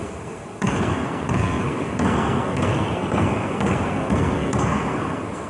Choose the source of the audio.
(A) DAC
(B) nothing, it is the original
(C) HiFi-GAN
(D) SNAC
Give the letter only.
D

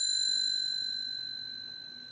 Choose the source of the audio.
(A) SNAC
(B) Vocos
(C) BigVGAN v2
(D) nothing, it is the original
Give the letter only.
D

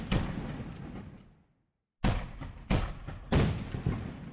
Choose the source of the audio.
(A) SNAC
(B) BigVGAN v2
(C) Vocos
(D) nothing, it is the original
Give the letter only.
D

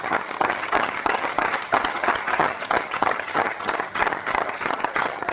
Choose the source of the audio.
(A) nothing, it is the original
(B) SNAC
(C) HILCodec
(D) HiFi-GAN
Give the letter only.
D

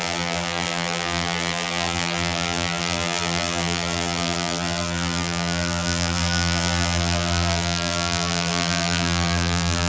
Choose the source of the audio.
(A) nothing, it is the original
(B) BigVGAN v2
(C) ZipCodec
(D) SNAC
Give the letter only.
B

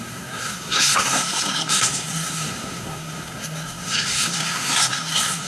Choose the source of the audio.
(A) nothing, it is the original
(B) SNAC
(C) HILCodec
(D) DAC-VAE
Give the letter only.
B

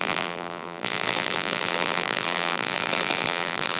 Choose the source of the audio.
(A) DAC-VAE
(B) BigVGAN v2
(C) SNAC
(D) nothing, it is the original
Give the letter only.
B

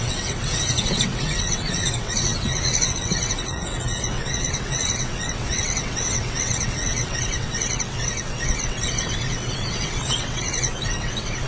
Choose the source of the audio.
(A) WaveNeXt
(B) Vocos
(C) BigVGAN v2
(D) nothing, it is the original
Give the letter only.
A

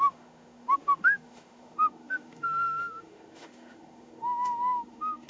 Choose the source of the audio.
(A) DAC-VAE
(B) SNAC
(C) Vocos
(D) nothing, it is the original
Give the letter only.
A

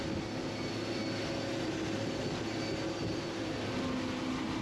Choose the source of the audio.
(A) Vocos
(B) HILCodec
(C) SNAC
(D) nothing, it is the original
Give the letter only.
D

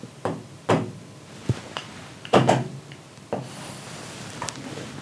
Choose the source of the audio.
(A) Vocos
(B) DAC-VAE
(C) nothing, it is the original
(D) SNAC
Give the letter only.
C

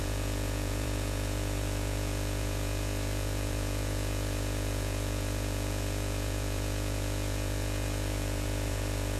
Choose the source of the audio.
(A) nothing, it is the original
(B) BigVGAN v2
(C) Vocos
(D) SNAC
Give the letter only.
C